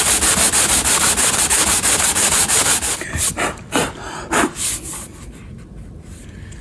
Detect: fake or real real